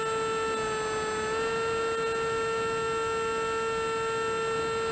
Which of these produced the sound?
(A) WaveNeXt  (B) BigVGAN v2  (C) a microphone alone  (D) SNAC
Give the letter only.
C